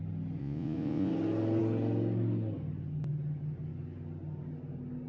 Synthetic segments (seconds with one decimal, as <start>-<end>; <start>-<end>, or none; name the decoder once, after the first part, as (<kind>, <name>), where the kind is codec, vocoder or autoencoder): 0.4-1.1 (vocoder, Vocos)